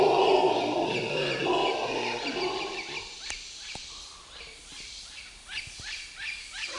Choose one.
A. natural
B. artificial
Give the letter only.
A